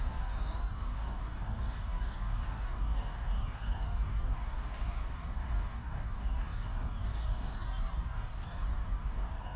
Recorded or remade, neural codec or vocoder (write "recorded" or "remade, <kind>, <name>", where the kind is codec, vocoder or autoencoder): remade, codec, DAC